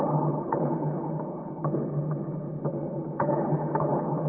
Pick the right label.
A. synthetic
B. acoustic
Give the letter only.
A